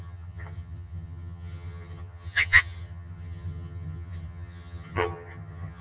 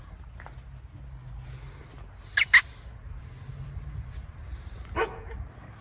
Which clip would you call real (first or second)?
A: second